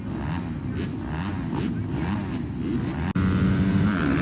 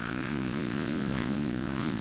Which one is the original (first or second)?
first